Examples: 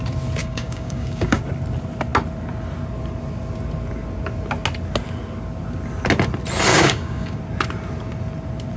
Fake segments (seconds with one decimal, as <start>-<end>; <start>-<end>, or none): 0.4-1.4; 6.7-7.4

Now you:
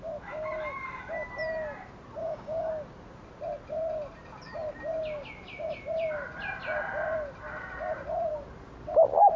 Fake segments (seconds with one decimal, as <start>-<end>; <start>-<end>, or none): 2.2-2.7

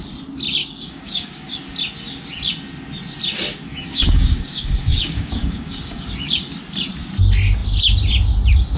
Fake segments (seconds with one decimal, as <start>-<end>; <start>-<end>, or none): 0.6-1.6; 3.7-6.1